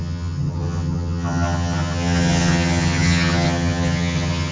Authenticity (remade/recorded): remade